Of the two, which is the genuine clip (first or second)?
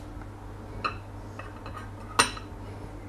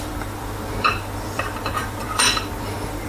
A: first